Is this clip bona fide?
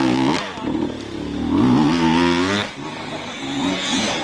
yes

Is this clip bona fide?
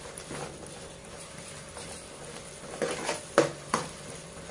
yes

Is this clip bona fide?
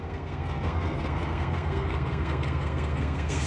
no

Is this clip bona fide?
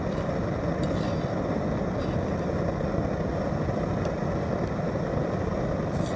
yes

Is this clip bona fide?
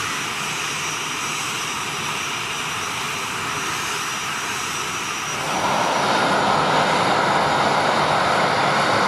yes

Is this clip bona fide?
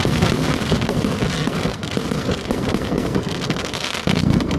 no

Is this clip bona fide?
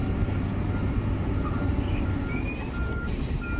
yes